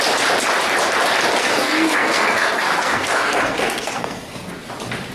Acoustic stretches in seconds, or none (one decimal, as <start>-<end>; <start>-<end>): 0.0-1.4; 4.5-5.1